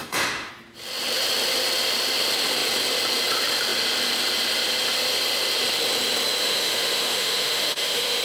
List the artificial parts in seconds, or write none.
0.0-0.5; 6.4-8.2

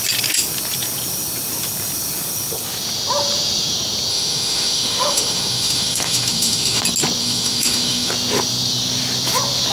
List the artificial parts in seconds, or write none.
4.1-6.8; 7.2-8.1

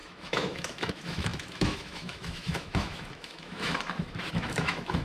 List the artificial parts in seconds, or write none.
0.0-5.0

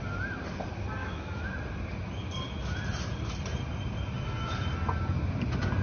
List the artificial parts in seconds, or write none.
1.0-1.5

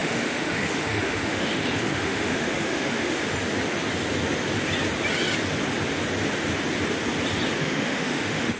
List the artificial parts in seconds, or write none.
0.0-3.2; 7.6-8.6

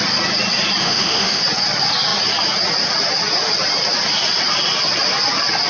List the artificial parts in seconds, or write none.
0.8-1.4

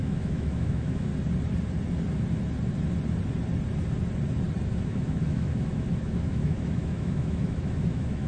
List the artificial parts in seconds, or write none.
0.0-1.1; 4.7-8.3